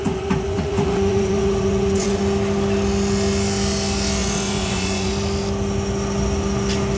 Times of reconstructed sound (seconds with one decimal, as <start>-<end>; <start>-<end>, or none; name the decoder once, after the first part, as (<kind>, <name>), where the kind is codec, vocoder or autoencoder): 0.0-2.2 (vocoder, Vocos); 4.2-5.1

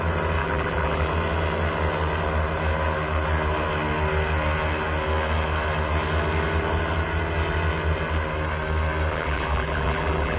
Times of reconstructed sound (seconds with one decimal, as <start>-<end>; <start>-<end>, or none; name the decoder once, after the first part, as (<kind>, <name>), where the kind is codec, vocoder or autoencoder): 0.4-1.1 (vocoder, BigVGAN v2); 9.1-10.4

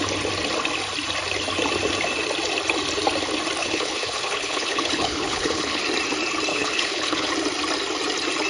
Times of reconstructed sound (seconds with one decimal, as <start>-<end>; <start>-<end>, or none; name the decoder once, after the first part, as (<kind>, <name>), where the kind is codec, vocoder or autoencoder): 3.6-5.8 (codec, HILCodec); 6.5-7.3

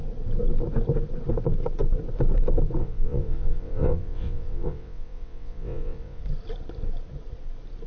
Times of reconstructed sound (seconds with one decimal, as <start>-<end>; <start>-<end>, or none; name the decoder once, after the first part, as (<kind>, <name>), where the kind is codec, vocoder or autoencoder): 2.8-6.2 (vocoder, WaveNeXt)